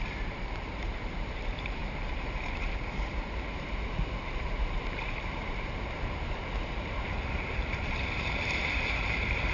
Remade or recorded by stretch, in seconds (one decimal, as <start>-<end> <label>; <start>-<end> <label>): 0.0-9.5 remade